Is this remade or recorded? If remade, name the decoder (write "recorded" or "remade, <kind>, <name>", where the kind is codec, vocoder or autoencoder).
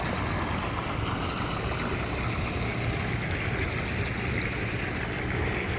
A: recorded